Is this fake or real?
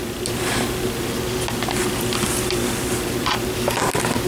real